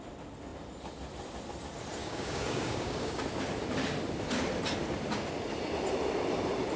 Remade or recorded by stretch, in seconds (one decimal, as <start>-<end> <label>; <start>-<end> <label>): 0.0-2.0 recorded; 2.0-3.2 remade; 3.2-6.8 recorded